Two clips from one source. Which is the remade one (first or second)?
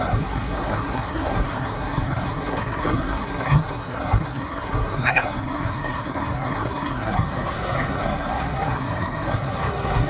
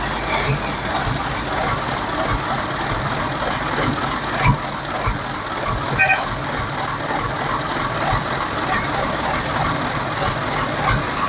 first